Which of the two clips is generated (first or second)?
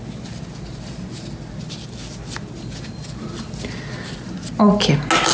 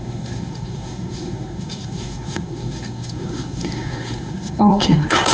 second